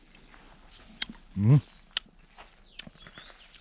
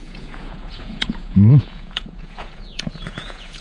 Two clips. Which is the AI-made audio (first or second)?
second